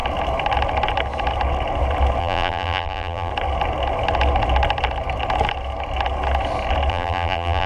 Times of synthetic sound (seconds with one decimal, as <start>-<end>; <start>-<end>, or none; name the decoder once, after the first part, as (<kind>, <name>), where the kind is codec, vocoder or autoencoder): 2.2-3.3 (vocoder, BigVGAN v2); 6.9-7.7